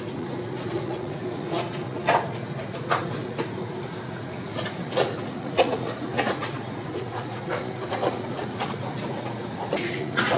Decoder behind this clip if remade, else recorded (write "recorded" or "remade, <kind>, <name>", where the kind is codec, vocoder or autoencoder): remade, vocoder, Vocos